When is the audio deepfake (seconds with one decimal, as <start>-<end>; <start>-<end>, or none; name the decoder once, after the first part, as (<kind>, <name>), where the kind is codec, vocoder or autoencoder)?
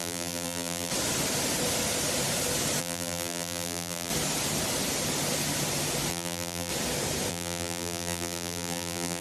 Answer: 0.0-0.9 (vocoder, BigVGAN v2); 2.8-4.1; 6.1-6.7; 7.3-9.2